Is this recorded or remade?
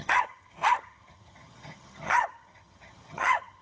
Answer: remade